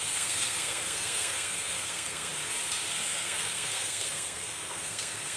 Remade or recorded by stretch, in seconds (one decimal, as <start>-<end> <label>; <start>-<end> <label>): 0.0-2.3 remade; 2.3-2.9 recorded; 2.9-5.4 remade